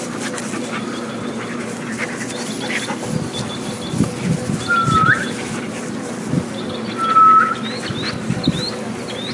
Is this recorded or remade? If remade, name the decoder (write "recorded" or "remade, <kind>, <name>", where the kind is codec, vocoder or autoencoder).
recorded